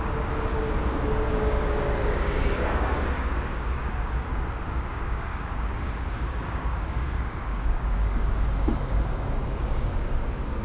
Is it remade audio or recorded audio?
remade